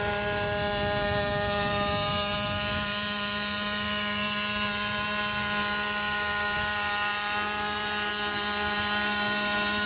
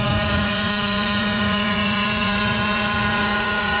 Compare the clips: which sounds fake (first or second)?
second